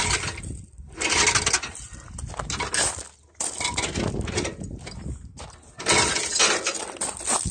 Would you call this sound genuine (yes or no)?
yes